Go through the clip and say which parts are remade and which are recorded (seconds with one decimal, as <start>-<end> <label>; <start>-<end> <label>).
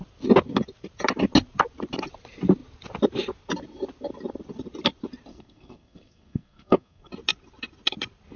0.0-5.3 recorded; 5.3-7.1 remade; 7.1-8.4 recorded